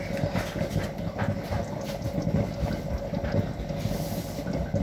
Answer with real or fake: real